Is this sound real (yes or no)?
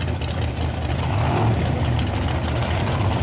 yes